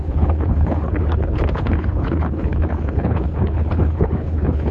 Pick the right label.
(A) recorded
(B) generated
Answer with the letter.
B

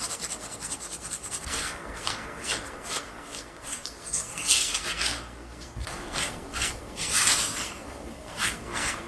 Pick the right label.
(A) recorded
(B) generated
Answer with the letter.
B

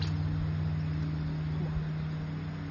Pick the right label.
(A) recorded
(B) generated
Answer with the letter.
A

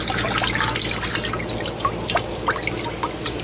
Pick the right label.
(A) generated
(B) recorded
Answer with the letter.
B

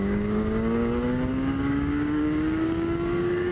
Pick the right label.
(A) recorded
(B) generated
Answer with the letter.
B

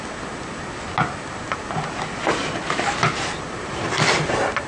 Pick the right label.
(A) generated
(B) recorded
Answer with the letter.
B